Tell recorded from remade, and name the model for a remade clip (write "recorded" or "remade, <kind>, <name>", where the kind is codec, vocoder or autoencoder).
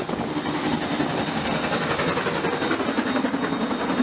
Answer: recorded